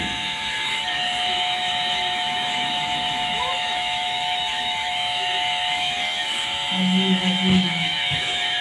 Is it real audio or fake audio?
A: fake